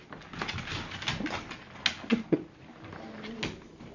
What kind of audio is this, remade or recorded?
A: recorded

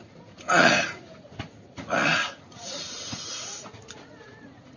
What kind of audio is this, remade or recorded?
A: remade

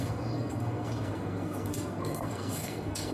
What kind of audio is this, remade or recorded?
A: remade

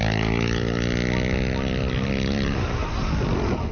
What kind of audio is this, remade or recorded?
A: recorded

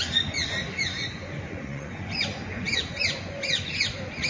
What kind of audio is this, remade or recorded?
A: remade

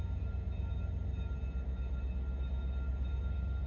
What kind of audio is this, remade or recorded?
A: recorded